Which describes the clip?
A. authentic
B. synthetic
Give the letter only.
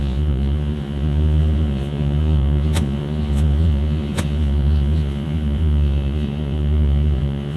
B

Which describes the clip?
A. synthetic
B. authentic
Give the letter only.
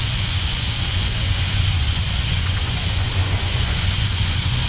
A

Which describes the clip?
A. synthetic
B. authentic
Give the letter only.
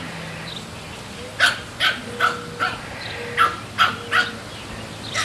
B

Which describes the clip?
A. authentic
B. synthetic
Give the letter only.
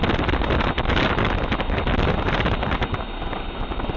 A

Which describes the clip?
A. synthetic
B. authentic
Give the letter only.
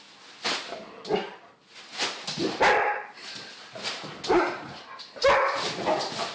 B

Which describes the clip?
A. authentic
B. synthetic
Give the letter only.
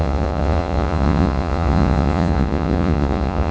B